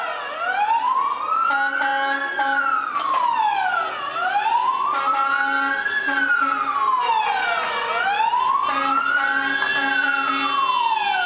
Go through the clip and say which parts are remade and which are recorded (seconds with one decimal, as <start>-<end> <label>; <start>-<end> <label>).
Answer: 0.0-11.3 recorded